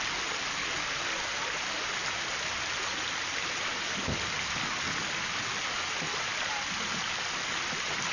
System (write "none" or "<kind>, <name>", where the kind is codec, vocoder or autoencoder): none